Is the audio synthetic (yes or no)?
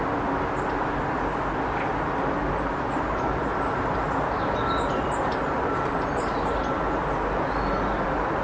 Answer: no